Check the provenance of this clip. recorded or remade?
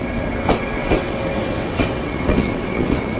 remade